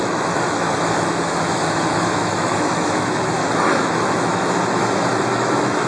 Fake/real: fake